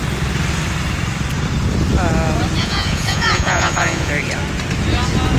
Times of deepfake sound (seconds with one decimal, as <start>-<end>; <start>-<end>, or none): 2.6-4.1